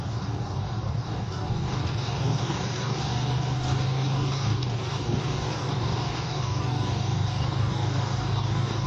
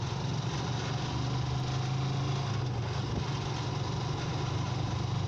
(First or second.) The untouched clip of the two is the second